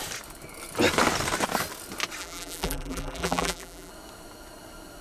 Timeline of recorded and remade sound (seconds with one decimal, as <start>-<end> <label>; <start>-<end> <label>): 0.0-2.2 recorded; 2.2-3.9 remade; 3.9-5.0 recorded